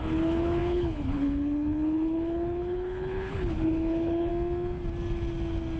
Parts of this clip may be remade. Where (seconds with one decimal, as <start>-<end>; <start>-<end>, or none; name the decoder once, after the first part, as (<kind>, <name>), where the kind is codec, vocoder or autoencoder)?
0.0-4.3 (codec, HILCodec)